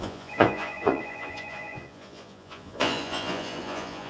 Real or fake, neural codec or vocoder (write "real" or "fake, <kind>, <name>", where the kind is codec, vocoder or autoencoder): fake, vocoder, Vocos